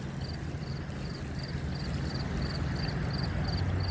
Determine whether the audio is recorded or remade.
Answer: recorded